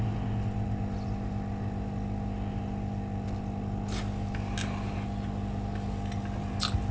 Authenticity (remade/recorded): recorded